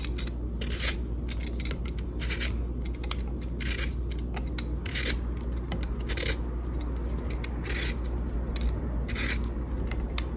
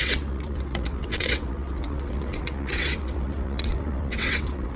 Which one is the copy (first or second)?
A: second